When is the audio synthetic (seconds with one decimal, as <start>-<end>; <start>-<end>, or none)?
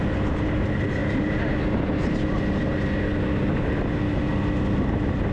none